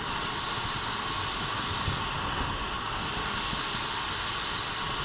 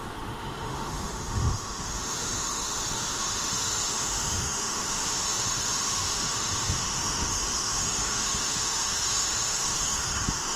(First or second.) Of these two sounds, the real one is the first